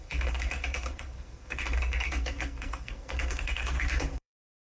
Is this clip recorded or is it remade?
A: remade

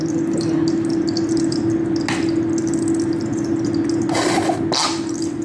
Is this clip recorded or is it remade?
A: recorded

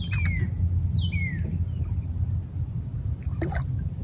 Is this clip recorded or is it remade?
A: recorded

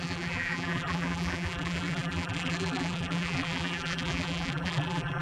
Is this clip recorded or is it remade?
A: remade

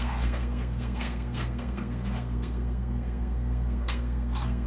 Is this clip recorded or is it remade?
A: remade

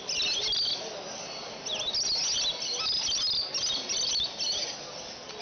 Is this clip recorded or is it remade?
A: recorded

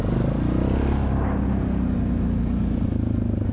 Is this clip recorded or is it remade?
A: recorded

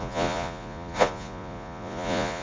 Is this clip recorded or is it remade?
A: remade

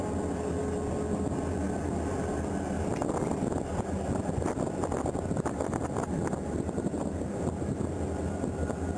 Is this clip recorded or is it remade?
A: recorded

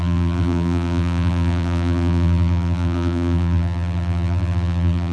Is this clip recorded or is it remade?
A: remade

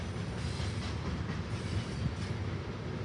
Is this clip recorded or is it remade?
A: recorded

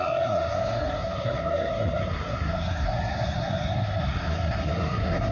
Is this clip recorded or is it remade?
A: remade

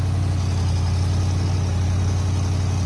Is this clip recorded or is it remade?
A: recorded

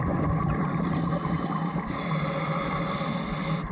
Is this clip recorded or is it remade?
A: recorded